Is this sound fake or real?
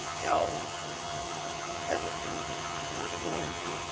fake